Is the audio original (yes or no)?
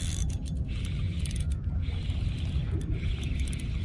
yes